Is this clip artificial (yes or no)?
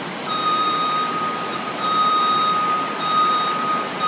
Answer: yes